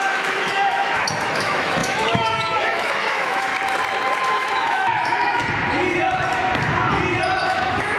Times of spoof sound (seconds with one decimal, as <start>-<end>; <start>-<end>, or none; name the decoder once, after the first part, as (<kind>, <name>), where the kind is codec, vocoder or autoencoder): 0.0-3.5 (autoencoder, DAC-VAE); 4.2-5.4; 7.4-8.0